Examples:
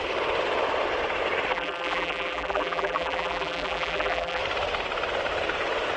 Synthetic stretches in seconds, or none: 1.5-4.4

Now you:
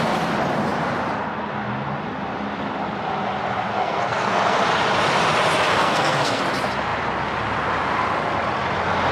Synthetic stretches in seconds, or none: 3.7-4.6; 5.7-6.4

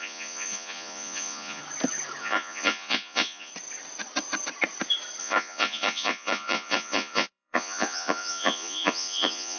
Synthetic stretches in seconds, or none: 0.0-1.6; 2.2-3.5; 5.2-9.6

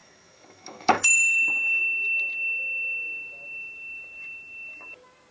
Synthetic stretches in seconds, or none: 0.0-1.8

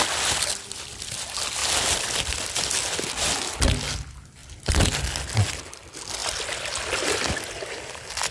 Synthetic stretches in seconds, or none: none

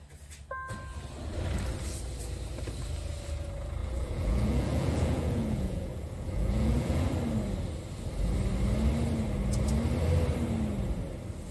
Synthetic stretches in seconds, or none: 3.8-7.1